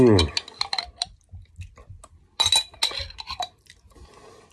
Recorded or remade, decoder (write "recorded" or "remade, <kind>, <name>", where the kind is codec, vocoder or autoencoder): recorded